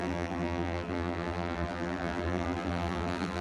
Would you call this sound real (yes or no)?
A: no